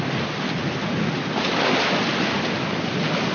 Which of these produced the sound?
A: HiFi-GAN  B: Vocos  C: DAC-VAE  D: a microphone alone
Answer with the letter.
D